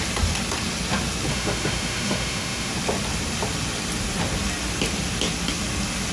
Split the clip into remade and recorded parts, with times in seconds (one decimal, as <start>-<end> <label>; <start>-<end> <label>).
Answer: 0.0-1.3 recorded; 1.3-2.7 remade; 2.7-6.1 recorded